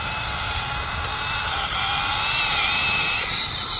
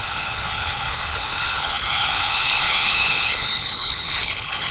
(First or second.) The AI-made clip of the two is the second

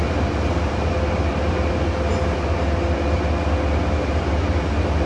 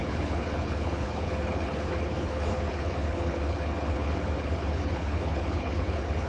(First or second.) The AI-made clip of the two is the second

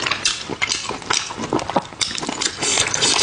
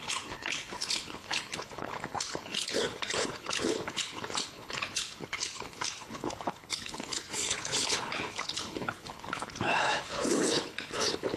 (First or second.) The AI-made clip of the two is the second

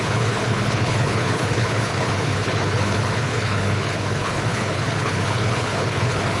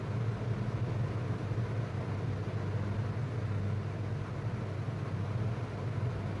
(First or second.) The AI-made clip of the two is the first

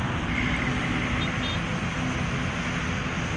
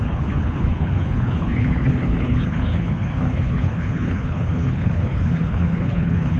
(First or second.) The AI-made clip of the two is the second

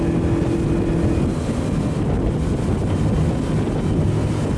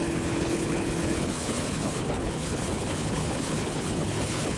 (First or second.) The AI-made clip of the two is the second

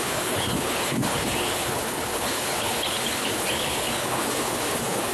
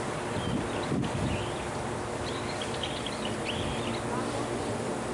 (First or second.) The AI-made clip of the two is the first